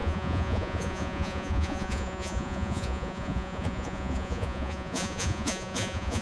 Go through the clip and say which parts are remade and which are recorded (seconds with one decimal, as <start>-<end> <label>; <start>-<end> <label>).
0.0-6.2 remade